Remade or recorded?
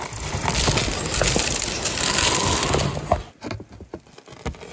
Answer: recorded